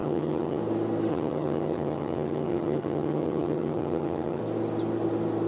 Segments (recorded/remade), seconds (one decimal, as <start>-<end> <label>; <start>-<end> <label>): 0.0-0.6 remade; 0.6-1.1 recorded; 1.1-4.4 remade; 4.4-5.5 recorded